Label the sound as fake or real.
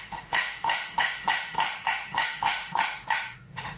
fake